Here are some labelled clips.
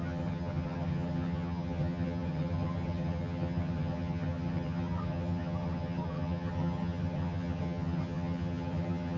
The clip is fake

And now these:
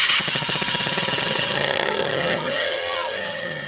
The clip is fake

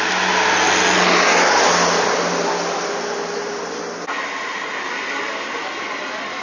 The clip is real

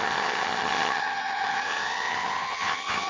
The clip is fake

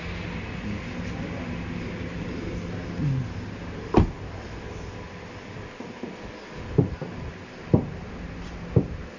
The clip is real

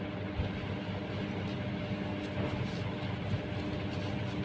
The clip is real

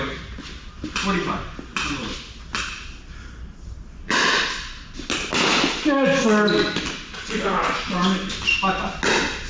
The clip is real